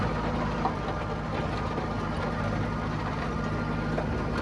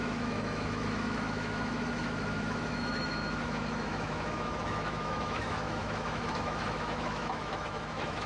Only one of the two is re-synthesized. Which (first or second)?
second